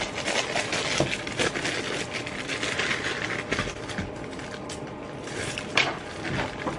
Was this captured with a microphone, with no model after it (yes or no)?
yes